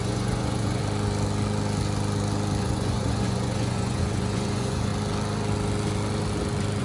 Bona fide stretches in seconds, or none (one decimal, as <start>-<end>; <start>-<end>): 0.8-2.6; 4.9-6.8